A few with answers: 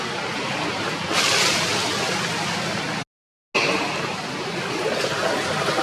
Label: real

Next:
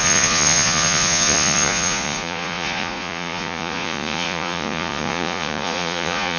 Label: fake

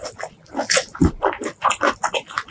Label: real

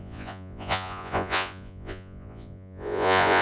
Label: fake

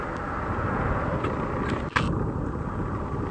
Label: real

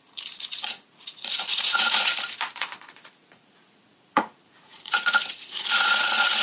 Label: fake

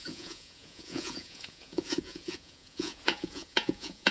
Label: fake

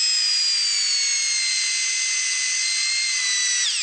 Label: real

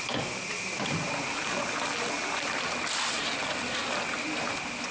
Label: real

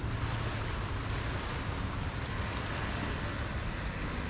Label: real